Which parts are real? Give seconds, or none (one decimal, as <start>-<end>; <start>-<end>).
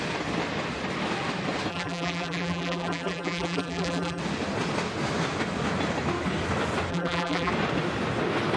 0.0-1.7; 4.2-6.9; 7.5-8.6